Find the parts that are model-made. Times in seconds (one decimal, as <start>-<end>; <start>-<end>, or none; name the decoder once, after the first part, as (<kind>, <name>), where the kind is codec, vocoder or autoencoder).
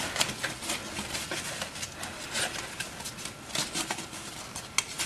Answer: none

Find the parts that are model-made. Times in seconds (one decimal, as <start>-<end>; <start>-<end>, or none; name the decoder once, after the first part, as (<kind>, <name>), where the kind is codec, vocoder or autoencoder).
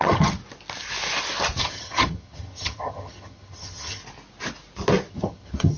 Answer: 0.0-0.4 (vocoder, HiFi-GAN); 1.6-4.0; 5.1-5.8